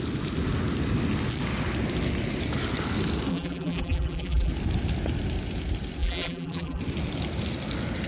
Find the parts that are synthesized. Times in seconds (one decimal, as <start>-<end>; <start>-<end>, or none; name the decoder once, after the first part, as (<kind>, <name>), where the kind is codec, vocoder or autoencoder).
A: 3.3-4.5 (vocoder, BigVGAN v2); 6.0-6.8